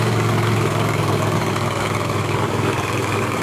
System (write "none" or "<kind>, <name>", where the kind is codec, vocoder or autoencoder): codec, DAC